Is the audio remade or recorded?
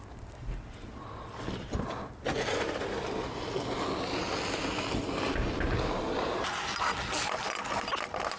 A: recorded